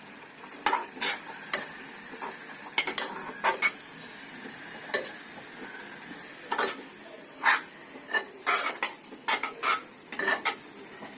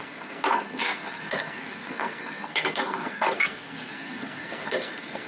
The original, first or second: first